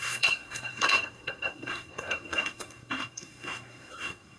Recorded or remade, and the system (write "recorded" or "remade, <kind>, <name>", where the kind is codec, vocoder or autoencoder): remade, codec, SNAC